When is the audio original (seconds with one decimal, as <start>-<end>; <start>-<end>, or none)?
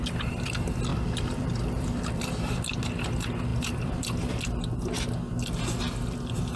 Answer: 0.0-0.9; 2.8-3.5; 4.3-6.6